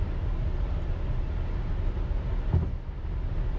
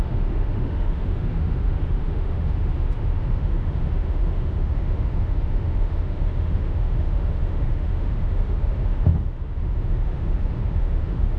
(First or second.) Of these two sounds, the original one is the first